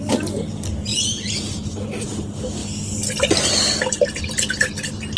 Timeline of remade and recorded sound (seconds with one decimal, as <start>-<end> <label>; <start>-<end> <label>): 0.0-0.9 recorded; 0.9-1.6 remade; 1.6-5.2 recorded